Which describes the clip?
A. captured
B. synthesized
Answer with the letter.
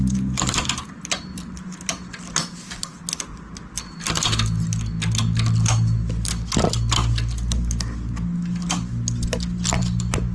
A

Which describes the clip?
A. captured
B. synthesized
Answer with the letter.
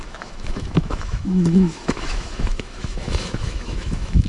B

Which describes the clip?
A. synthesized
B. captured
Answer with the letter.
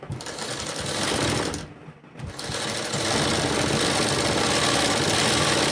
B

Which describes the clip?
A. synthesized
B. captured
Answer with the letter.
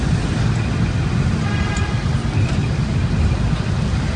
B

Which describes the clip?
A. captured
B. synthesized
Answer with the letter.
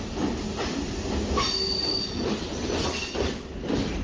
A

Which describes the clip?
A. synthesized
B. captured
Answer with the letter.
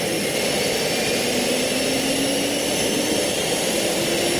B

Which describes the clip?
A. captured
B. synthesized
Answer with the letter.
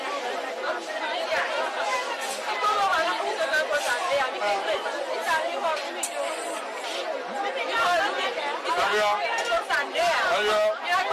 A